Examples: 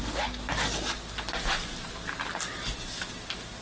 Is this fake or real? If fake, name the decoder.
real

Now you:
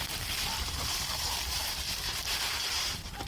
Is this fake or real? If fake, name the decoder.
fake, vocoder, BigVGAN v2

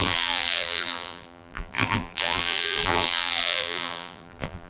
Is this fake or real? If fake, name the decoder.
fake, vocoder, BigVGAN v2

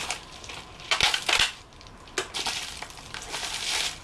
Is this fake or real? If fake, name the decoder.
real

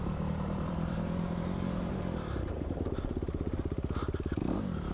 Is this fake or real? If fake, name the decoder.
fake, vocoder, BigVGAN v2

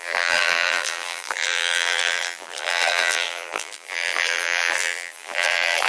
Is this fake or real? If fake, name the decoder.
fake, vocoder, BigVGAN v2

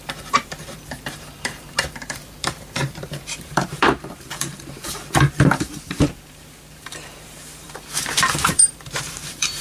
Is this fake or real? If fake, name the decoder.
fake, vocoder, BigVGAN v2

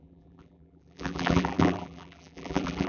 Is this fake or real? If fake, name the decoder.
fake, vocoder, BigVGAN v2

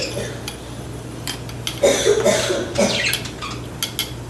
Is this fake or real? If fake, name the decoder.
real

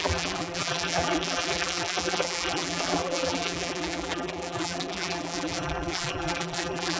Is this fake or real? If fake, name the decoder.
fake, vocoder, BigVGAN v2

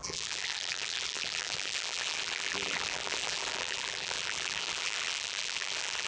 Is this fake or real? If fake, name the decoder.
fake, vocoder, BigVGAN v2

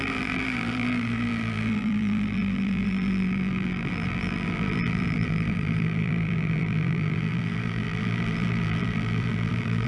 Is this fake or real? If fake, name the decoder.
fake, vocoder, BigVGAN v2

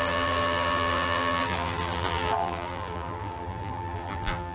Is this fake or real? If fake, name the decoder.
fake, vocoder, BigVGAN v2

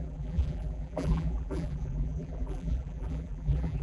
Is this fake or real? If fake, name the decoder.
fake, vocoder, BigVGAN v2